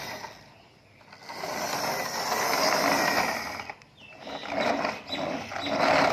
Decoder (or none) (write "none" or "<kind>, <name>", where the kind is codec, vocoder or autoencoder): none